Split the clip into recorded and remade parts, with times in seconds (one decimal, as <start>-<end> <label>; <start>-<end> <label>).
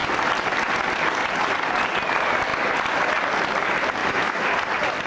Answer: 0.0-4.0 recorded; 4.0-4.5 remade; 4.5-5.1 recorded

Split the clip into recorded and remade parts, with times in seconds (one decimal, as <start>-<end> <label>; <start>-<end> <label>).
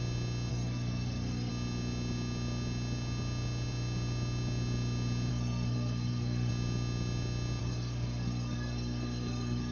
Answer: 0.0-0.5 recorded; 0.5-1.5 remade; 1.5-5.3 recorded; 5.3-6.5 remade; 6.5-7.6 recorded; 7.6-9.7 remade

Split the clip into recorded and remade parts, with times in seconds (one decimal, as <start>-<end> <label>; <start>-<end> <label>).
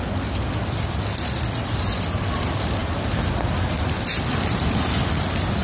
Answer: 0.0-5.6 recorded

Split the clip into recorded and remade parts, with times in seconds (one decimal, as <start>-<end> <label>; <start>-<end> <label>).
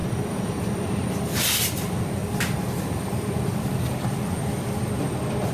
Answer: 0.0-2.2 remade; 2.2-2.8 recorded; 2.8-5.5 remade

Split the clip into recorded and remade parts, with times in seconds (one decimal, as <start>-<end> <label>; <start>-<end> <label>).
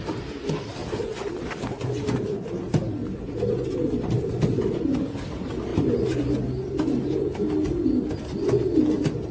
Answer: 0.0-0.8 recorded; 0.8-1.5 remade; 1.5-9.3 recorded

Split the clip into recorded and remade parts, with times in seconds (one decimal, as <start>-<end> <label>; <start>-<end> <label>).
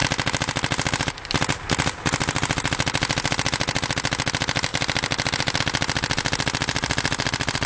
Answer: 0.0-7.7 recorded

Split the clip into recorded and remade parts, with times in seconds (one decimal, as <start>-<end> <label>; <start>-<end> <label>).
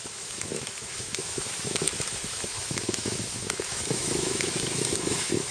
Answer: 0.0-5.5 remade